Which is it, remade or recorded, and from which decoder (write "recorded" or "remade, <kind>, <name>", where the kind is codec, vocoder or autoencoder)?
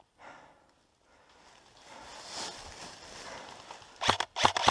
recorded